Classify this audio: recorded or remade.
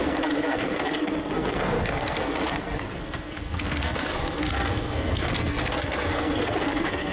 remade